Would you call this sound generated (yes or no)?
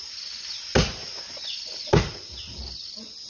no